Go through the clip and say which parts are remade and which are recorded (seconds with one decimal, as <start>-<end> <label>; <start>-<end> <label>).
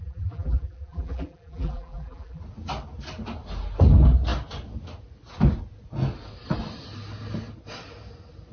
0.0-2.4 remade; 2.4-8.5 recorded